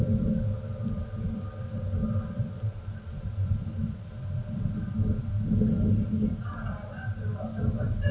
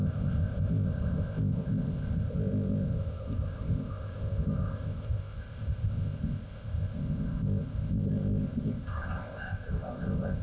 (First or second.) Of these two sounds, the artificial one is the second